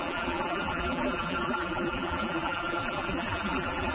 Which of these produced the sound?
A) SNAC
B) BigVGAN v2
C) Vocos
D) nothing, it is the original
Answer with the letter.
B